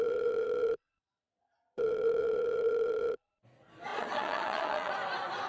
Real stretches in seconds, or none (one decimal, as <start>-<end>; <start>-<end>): 3.3-3.9; 4.9-5.5